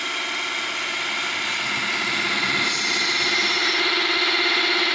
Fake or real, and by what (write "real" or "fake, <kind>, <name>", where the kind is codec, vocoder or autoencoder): real